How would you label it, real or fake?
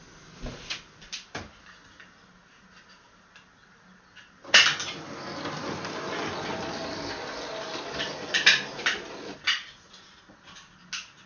real